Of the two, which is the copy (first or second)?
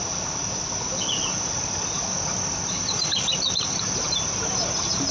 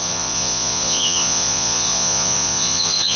second